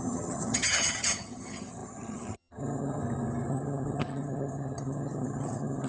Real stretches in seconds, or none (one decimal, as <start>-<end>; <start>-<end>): 3.0-3.5